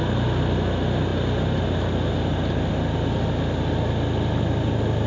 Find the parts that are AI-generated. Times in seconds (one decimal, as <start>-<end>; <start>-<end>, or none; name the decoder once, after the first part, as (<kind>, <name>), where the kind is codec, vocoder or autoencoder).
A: none